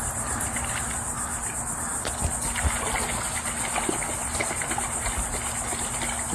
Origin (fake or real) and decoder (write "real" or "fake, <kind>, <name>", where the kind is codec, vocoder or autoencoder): real